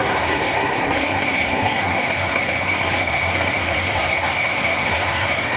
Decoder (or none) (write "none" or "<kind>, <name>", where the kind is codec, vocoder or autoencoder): codec, SNAC